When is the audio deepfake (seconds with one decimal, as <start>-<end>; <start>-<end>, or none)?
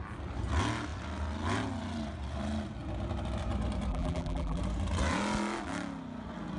3.9-4.6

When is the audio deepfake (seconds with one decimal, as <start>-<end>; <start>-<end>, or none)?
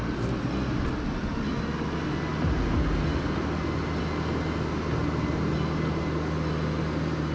none